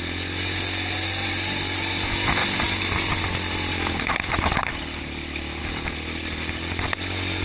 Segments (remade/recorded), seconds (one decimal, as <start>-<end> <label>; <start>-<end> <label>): 0.0-7.4 recorded